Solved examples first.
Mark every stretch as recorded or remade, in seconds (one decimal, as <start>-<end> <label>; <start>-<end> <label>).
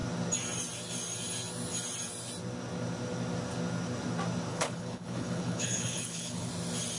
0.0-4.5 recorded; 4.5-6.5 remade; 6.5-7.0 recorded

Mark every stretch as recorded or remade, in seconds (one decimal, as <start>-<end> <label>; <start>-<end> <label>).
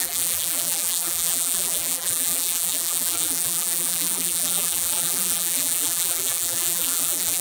0.0-7.4 remade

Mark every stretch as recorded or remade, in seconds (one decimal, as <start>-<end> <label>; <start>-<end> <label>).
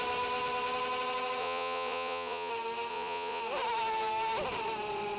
0.0-1.4 recorded; 1.4-2.5 remade; 2.5-2.9 recorded; 2.9-3.4 remade; 3.4-5.2 recorded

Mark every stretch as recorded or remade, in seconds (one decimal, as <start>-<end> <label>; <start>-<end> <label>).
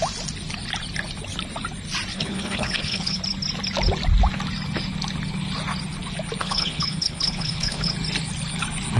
0.0-2.1 recorded; 2.1-3.2 remade; 3.2-6.4 recorded; 6.4-7.9 remade; 7.9-9.0 recorded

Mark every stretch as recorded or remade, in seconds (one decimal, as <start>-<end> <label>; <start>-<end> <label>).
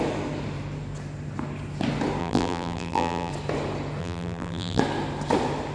0.0-2.2 recorded; 2.2-3.3 remade; 3.3-4.0 recorded; 4.0-4.8 remade; 4.8-5.7 recorded